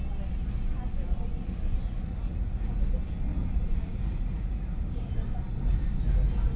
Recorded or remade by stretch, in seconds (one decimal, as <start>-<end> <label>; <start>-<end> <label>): 0.0-1.1 recorded; 1.1-2.8 remade; 2.8-3.3 recorded; 3.3-5.1 remade; 5.1-6.6 recorded